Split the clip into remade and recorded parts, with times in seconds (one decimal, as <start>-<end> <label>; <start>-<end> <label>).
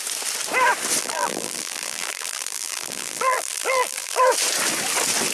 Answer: 0.0-1.0 recorded; 1.0-4.2 remade; 4.2-5.3 recorded